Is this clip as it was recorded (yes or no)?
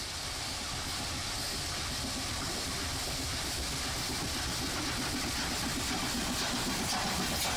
yes